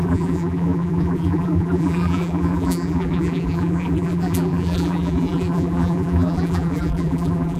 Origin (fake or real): fake